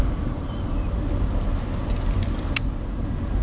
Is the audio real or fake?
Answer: real